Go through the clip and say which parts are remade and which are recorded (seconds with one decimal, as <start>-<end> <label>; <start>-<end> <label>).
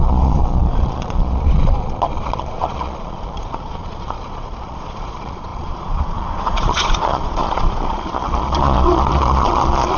0.0-10.0 remade